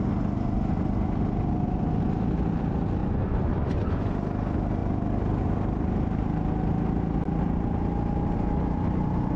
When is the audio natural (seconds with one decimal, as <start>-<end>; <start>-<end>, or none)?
0.0-3.0; 4.1-9.4